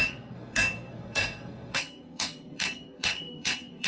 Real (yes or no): no